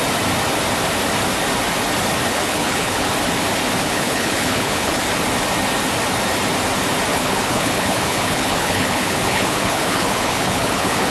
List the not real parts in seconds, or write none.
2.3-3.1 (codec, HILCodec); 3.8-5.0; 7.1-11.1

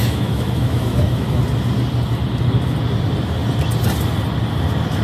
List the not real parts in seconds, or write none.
0.0-1.4 (autoencoder, DAC-VAE)